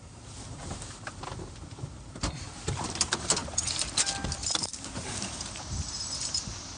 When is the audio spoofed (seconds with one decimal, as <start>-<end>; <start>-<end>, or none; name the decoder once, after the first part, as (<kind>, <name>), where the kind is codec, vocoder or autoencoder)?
0.0-3.4 (vocoder, BigVGAN v2)